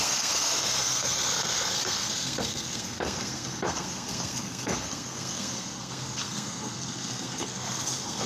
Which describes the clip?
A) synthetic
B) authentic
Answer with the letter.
A